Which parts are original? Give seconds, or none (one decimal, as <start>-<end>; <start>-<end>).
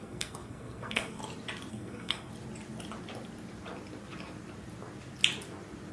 1.2-1.7; 2.3-5.9